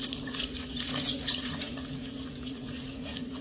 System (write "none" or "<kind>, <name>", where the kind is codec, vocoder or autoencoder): vocoder, Vocos